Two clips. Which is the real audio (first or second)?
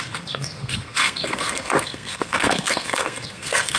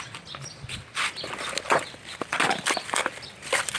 second